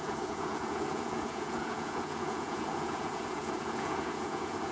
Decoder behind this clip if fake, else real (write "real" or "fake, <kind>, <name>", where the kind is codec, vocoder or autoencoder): fake, vocoder, Vocos